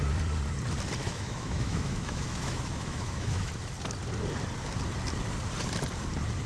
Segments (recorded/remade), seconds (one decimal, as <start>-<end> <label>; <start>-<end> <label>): 0.0-1.0 recorded; 1.0-3.5 remade; 3.5-6.5 recorded